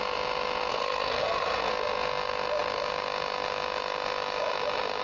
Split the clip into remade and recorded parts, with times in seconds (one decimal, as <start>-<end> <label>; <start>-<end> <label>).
0.0-0.7 recorded; 0.7-1.7 remade; 1.7-5.0 recorded